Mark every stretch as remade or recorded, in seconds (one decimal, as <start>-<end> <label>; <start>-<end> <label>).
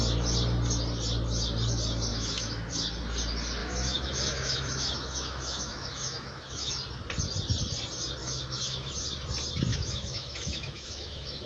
0.0-2.1 recorded; 2.1-2.7 remade; 2.7-3.6 recorded; 3.6-6.7 remade; 6.7-8.2 recorded; 8.2-8.9 remade; 8.9-9.7 recorded; 9.7-11.5 remade